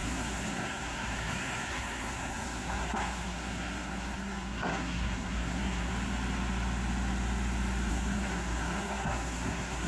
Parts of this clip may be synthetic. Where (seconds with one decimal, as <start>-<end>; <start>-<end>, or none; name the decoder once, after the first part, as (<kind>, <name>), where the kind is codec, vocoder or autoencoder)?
0.0-5.9 (codec, SNAC); 7.9-9.9